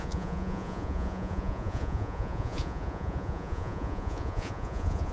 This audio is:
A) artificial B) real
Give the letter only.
A